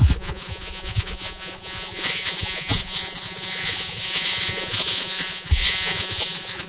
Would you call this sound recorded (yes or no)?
no